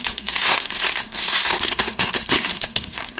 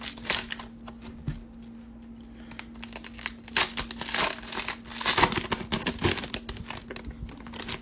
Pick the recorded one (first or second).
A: second